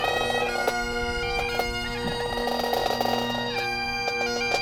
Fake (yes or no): no